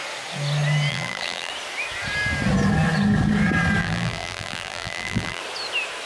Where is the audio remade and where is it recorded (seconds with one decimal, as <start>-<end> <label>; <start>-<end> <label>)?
0.0-0.9 recorded; 0.9-1.5 remade; 1.5-3.8 recorded; 3.8-5.4 remade; 5.4-6.1 recorded

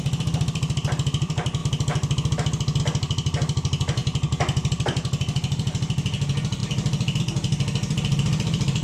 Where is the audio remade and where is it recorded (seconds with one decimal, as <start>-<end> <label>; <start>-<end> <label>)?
0.0-1.6 remade; 1.6-2.8 recorded; 2.8-4.0 remade; 4.0-4.7 recorded; 4.7-8.8 remade

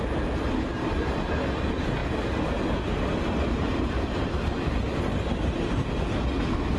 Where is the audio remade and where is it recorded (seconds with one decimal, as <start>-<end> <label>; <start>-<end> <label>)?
0.0-6.8 recorded

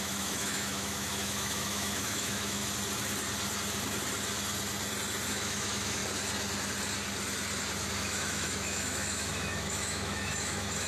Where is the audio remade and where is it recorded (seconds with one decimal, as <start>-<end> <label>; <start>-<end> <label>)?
0.0-2.6 remade; 2.6-5.3 recorded; 5.3-6.0 remade; 6.0-7.9 recorded; 7.9-10.9 remade

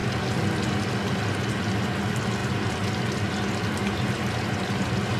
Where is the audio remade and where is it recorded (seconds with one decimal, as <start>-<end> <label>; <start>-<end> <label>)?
0.0-5.2 recorded